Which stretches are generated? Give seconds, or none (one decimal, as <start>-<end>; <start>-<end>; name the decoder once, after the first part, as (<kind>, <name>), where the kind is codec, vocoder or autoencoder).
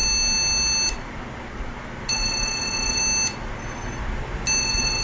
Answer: 2.1-3.0 (vocoder, WaveNeXt); 3.6-4.0; 4.6-5.0